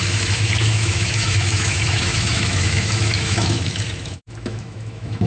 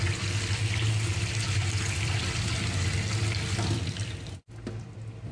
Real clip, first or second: second